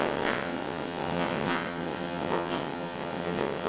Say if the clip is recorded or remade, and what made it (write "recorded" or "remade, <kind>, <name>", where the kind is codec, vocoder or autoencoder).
remade, vocoder, WaveNeXt